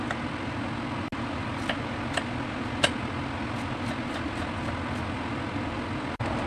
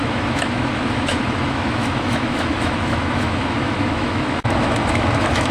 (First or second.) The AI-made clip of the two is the second